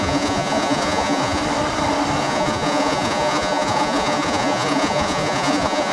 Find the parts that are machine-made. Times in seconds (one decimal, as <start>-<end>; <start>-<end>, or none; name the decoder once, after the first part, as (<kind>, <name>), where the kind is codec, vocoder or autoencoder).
0.0-1.4 (vocoder, Vocos); 2.2-5.9